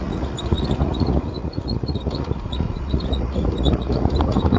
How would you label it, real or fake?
fake